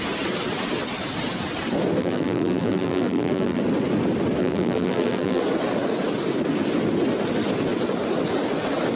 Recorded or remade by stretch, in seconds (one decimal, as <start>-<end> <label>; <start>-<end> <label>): 0.0-2.0 recorded; 2.0-3.6 remade; 3.6-4.4 recorded; 4.4-5.4 remade; 5.4-9.0 recorded